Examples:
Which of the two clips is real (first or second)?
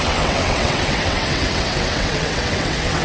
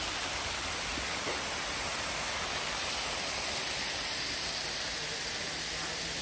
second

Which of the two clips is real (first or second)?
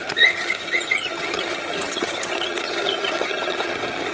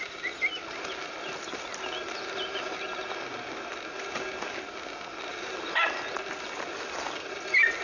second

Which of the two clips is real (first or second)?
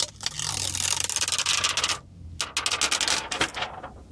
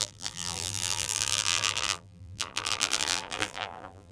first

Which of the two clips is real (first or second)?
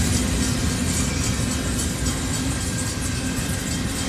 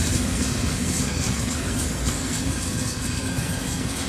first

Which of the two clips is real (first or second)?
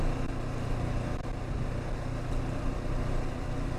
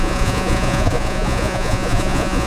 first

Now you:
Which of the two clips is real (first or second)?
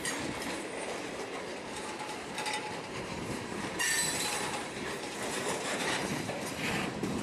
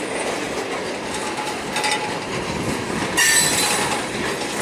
second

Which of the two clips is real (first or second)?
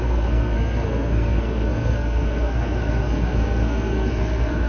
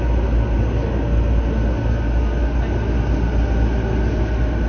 second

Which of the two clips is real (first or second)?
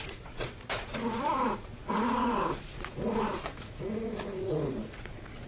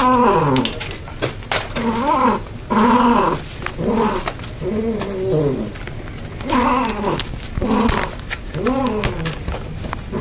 second